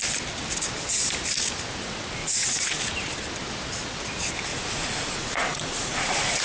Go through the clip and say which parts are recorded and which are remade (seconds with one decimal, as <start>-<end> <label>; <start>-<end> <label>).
0.0-2.2 recorded; 2.2-2.8 remade; 2.8-4.5 recorded; 4.5-6.4 remade